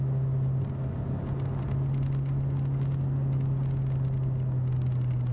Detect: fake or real real